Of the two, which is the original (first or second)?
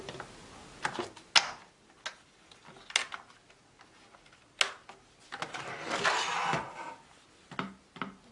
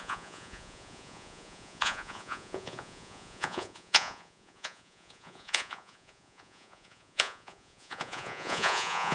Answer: first